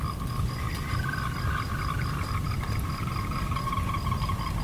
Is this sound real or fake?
real